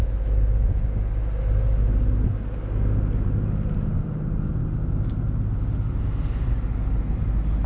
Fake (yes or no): no